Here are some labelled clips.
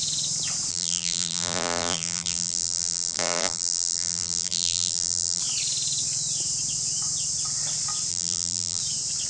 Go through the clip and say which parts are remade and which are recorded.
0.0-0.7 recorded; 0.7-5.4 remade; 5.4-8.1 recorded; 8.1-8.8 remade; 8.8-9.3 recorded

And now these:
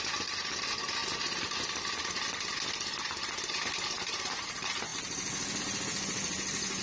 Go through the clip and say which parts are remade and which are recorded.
0.0-6.8 recorded

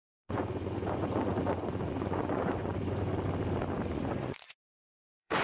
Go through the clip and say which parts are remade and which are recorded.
0.0-3.1 remade; 3.1-3.9 recorded; 3.9-5.4 remade

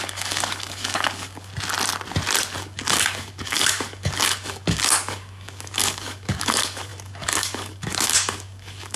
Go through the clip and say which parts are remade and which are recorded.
0.0-1.5 remade; 1.5-2.6 recorded; 2.6-9.0 remade

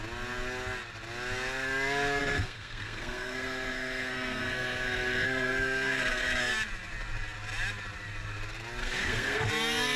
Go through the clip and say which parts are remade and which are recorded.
0.0-2.2 recorded; 2.2-6.5 remade; 6.5-8.8 recorded; 8.8-9.5 remade; 9.5-10.0 recorded

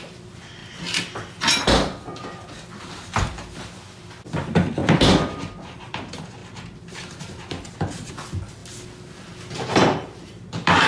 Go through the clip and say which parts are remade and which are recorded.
0.0-0.6 remade; 0.6-1.3 recorded; 1.3-4.8 remade; 4.8-5.8 recorded; 5.8-6.4 remade; 6.4-8.1 recorded; 8.1-8.6 remade; 8.6-9.8 recorded; 9.8-10.9 remade

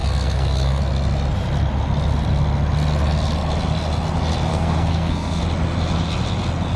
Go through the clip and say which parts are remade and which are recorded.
0.0-0.8 remade; 0.8-4.5 recorded; 4.5-5.4 remade; 5.4-6.8 recorded

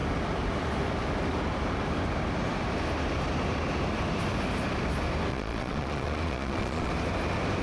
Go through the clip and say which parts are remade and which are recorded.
0.0-5.3 recorded; 5.3-6.9 remade; 6.9-7.6 recorded